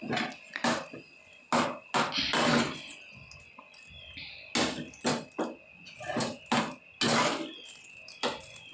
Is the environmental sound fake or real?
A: real